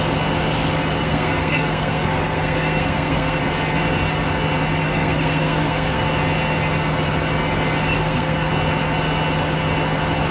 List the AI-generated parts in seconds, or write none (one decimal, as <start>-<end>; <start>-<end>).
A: 1.0-3.4; 4.8-6.0; 8.0-8.5